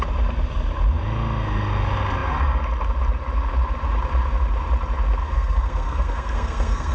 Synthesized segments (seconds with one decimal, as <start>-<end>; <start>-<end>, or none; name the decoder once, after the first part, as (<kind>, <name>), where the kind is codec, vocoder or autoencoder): 5.2-6.9 (codec, SNAC)